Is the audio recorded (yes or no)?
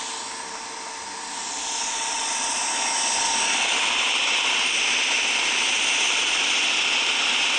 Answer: yes